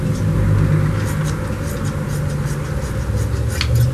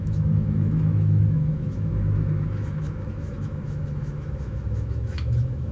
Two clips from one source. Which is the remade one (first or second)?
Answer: second